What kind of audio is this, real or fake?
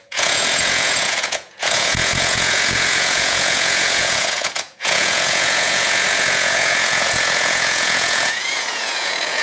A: fake